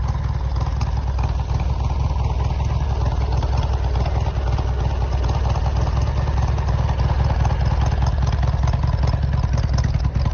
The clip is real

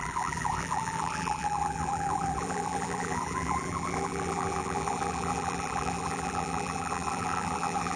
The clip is fake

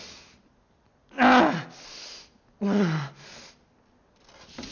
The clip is real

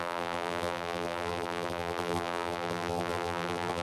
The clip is fake